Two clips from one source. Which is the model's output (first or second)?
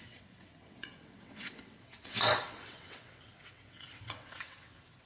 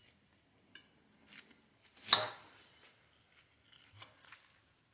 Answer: first